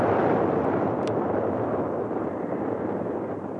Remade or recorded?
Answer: recorded